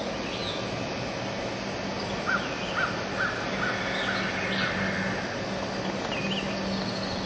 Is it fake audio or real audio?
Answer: real